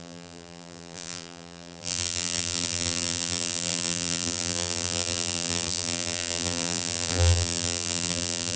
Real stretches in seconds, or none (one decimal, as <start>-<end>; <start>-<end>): none